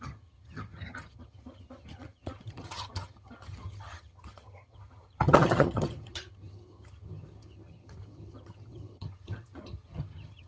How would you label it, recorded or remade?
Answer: remade